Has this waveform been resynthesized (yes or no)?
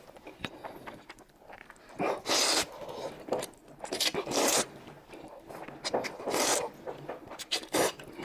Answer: no